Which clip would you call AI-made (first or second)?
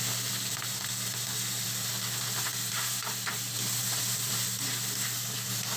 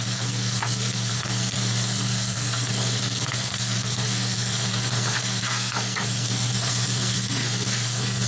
second